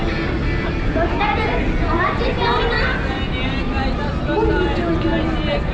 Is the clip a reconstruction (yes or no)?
no